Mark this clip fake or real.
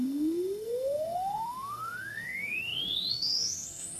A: fake